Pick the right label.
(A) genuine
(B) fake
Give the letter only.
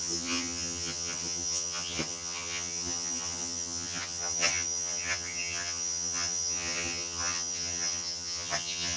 B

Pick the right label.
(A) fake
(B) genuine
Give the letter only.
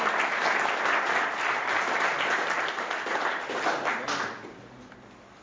B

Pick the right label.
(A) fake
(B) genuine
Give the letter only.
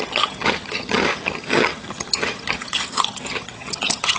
A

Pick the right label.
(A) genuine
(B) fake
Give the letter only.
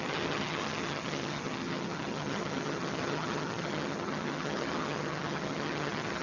B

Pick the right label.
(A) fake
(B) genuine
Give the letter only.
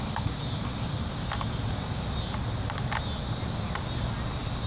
B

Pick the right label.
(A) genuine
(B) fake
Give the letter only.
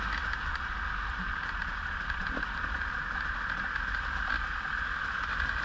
A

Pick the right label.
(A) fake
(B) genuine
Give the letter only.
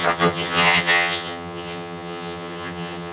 A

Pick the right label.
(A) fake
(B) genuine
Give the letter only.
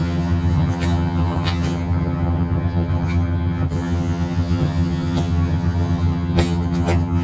A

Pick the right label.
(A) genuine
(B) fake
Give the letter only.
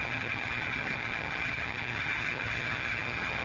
B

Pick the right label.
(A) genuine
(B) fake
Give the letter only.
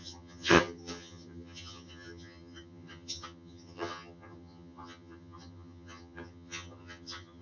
B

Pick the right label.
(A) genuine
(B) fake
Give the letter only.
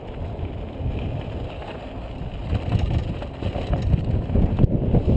A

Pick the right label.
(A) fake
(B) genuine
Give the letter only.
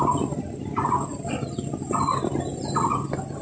B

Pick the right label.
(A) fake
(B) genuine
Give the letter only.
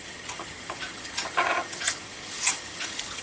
A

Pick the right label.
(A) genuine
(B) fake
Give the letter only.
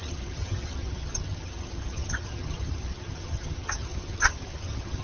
B